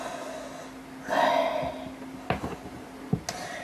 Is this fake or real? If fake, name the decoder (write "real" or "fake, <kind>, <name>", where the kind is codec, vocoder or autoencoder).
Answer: real